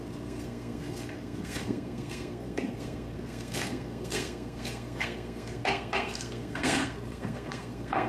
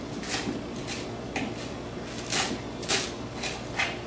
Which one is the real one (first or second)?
second